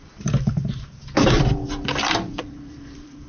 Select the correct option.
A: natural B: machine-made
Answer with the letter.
B